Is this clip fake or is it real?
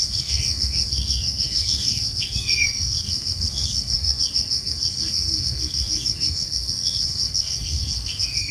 fake